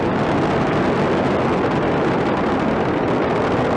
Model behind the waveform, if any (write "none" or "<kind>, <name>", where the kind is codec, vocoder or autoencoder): none